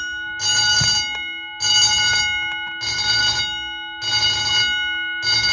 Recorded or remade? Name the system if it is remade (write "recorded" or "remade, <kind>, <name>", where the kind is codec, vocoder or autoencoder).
recorded